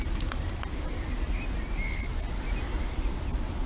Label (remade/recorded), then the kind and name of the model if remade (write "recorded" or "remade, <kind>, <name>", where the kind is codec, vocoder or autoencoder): recorded